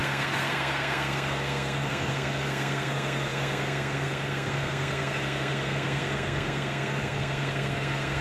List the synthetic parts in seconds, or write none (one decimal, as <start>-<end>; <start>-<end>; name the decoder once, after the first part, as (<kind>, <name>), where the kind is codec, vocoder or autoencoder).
0.0-8.2 (codec, SNAC)